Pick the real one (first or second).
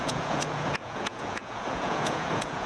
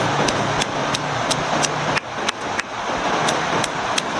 second